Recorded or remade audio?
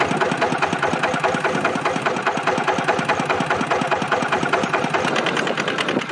recorded